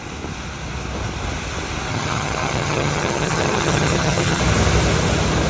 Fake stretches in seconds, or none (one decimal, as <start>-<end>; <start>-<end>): 1.9-4.4